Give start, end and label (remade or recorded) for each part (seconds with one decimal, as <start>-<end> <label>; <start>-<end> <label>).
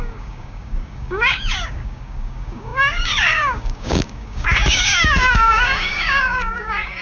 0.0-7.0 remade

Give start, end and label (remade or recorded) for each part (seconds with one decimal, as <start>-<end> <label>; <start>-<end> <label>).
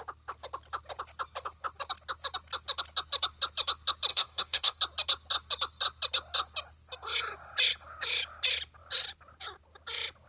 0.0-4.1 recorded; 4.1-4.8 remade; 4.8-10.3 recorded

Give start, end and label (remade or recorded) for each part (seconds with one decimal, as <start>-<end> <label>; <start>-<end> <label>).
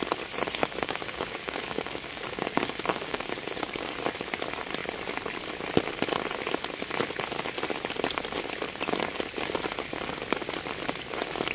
0.0-0.6 recorded; 0.6-3.9 remade; 3.9-11.5 recorded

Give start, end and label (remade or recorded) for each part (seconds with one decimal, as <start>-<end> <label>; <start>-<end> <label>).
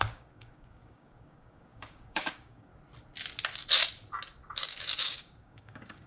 0.0-2.7 remade; 2.7-5.0 recorded; 5.0-6.1 remade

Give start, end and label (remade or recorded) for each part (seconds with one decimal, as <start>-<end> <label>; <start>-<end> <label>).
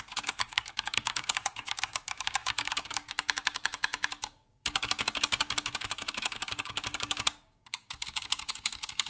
0.0-9.1 remade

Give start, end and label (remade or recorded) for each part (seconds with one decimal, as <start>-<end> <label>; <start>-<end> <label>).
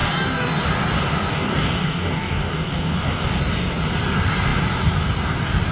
0.0-0.6 remade; 0.6-1.3 recorded; 1.3-3.4 remade; 3.4-5.7 recorded